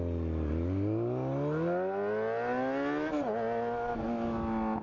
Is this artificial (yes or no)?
no